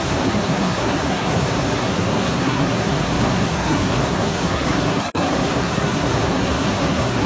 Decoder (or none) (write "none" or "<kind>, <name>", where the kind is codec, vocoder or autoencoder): codec, SNAC